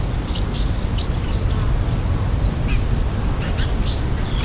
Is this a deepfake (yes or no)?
no